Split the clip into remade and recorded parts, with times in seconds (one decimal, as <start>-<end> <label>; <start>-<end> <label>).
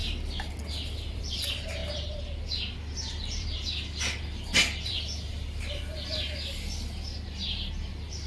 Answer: 0.0-0.7 recorded; 0.7-1.8 remade; 1.8-2.4 recorded; 2.4-8.3 remade